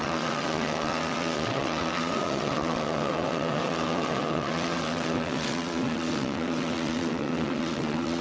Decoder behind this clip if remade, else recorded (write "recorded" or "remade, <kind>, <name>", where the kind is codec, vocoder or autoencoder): remade, vocoder, WaveNeXt